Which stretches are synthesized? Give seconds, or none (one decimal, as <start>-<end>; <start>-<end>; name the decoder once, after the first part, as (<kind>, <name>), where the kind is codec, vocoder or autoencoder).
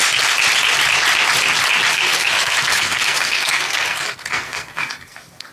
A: 1.9-5.5 (codec, SNAC)